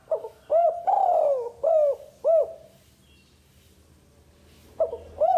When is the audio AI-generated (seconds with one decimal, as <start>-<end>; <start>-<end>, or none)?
none